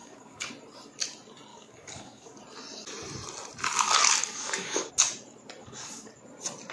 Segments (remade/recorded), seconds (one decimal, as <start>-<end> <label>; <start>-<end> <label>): 0.0-0.5 remade; 0.5-1.5 recorded; 1.5-2.4 remade; 2.4-4.2 recorded; 4.2-4.9 remade; 4.9-5.6 recorded; 5.6-6.1 remade; 6.1-6.7 recorded